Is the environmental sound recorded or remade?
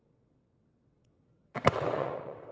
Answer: remade